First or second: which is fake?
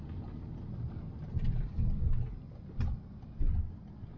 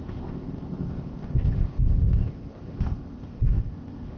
second